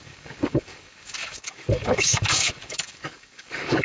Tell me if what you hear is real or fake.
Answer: fake